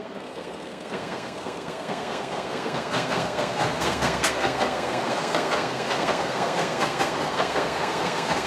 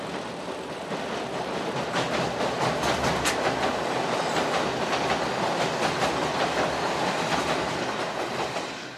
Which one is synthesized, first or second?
first